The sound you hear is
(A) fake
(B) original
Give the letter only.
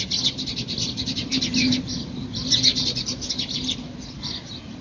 B